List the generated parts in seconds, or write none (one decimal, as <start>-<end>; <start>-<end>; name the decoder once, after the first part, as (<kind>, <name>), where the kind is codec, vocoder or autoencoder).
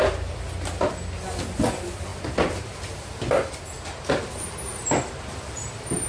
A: none